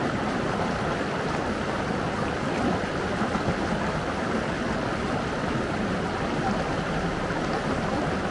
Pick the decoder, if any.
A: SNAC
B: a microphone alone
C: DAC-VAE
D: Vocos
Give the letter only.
B